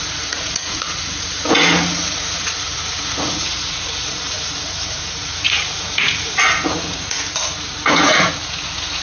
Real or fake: fake